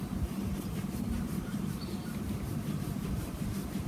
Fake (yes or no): yes